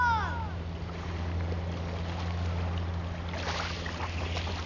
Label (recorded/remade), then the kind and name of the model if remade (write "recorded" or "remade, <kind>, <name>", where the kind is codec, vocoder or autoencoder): recorded